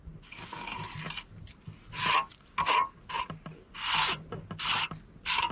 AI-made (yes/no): no